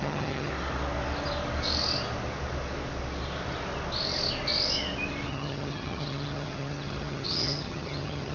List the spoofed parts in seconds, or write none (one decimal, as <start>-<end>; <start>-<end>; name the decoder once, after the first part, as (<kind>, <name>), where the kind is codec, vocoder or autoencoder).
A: 0.0-0.5 (vocoder, HiFi-GAN); 5.3-8.3